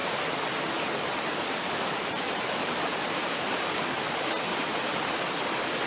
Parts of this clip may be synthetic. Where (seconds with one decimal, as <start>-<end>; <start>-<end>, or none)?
2.6-3.7; 4.5-5.2